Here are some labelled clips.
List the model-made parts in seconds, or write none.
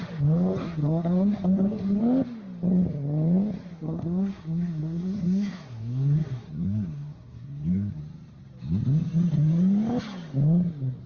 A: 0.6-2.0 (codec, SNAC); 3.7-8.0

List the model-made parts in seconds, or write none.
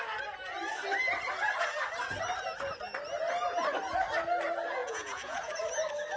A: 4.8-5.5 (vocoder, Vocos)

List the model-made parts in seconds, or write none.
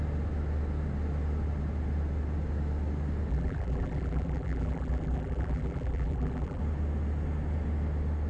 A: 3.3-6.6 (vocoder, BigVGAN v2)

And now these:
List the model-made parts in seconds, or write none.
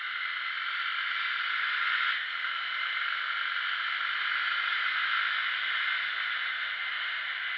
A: 1.7-2.2 (vocoder, Vocos)